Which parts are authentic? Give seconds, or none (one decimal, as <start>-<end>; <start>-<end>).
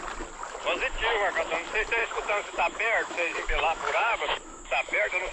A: 0.0-2.0